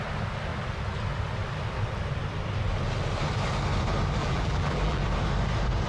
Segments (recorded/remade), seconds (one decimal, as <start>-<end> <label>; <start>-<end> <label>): 0.0-4.2 recorded; 4.2-5.0 remade; 5.0-5.9 recorded